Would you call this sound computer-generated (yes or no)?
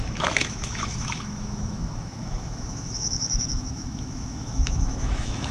yes